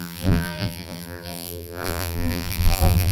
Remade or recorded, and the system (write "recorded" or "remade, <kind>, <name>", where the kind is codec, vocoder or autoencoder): remade, vocoder, BigVGAN v2